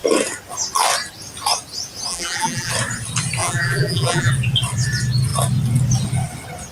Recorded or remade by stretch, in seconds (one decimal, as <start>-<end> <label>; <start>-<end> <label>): 0.0-2.1 recorded; 2.1-2.7 remade; 2.7-3.4 recorded; 3.4-4.3 remade; 4.3-6.7 recorded